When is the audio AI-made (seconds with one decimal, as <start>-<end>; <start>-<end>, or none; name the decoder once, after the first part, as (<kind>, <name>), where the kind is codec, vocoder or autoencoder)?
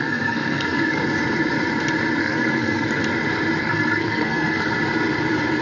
0.0-1.0 (codec, SNAC); 2.2-3.0; 3.6-4.7